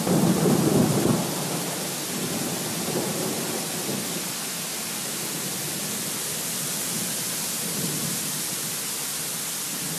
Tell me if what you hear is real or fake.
real